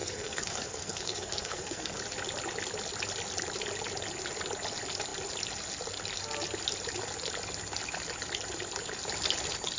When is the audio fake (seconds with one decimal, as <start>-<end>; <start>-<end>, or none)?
0.0-2.0